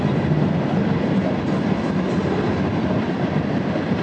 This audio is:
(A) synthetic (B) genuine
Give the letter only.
B